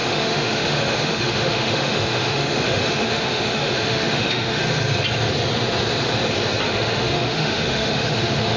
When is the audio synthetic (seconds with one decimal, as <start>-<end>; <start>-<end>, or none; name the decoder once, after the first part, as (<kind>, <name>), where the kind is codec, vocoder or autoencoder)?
0.0-4.6 (autoencoder, DAC-VAE); 6.7-8.6